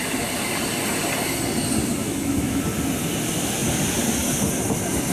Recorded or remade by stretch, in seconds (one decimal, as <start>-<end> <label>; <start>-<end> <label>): 0.0-2.0 recorded; 2.0-2.6 remade; 2.6-5.1 recorded